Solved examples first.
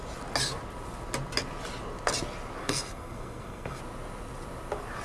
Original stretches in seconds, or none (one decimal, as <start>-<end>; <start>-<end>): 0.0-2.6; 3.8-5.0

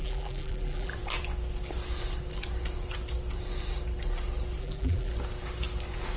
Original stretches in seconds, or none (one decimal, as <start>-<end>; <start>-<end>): 0.9-4.6; 5.1-6.2

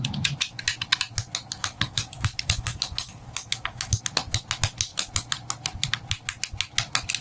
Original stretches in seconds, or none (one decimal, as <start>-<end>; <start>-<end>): 0.0-1.6; 4.0-7.2